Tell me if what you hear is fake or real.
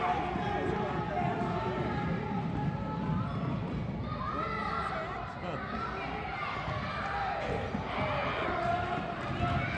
real